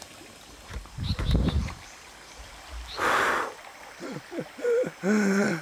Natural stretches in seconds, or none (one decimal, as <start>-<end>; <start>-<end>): 0.0-1.6; 4.5-5.6